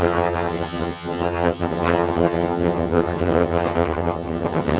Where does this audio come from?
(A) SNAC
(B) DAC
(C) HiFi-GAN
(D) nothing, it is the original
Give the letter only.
C